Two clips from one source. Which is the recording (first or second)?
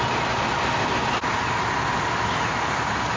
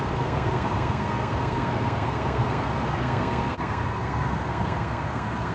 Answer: first